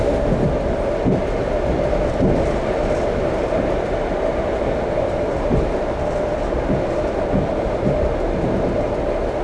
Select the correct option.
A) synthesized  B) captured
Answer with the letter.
B